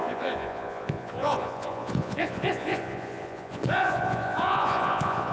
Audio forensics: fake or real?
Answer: fake